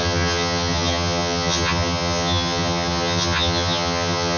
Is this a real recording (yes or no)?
no